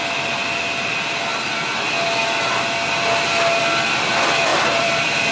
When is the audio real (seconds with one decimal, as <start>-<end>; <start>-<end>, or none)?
0.0-4.5